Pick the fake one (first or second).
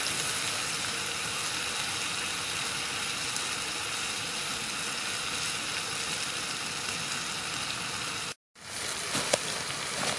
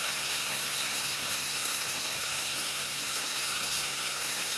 second